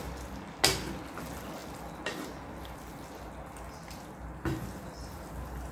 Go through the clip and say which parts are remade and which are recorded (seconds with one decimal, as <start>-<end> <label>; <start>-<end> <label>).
0.0-5.7 recorded